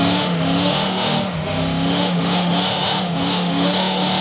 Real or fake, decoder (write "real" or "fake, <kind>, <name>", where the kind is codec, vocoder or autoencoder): fake, autoencoder, DAC-VAE